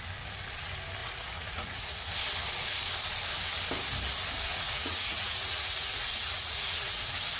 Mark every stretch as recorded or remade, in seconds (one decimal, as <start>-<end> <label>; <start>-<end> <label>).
0.0-1.0 recorded; 1.0-2.1 remade; 2.1-4.5 recorded; 4.5-7.0 remade; 7.0-7.4 recorded